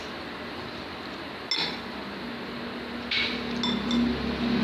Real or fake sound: real